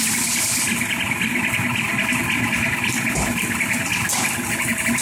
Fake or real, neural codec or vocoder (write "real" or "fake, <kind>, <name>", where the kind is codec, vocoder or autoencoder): real